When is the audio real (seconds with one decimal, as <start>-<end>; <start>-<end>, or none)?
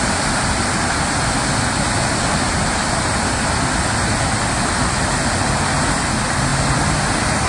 0.0-7.5